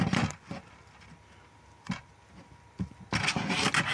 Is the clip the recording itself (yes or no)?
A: yes